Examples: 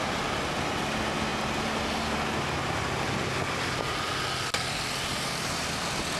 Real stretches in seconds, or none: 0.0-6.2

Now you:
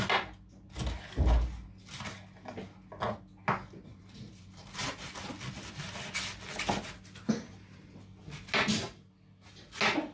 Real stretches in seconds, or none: 0.0-3.9; 5.1-10.1

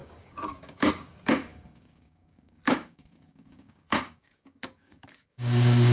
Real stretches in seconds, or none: none

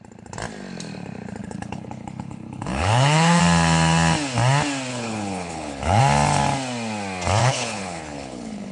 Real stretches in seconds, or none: 0.0-1.4; 3.4-4.9; 6.0-7.4

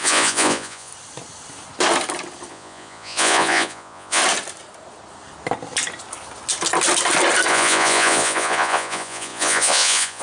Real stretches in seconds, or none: 0.9-2.5; 4.2-7.5

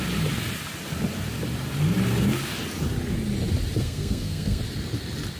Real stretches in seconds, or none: 0.0-3.8; 4.6-5.4

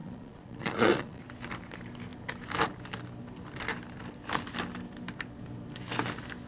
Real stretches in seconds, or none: 1.2-6.5